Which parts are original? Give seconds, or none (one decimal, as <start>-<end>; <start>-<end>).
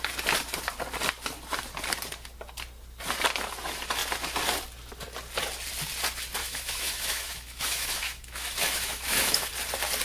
0.0-6.4; 9.5-10.0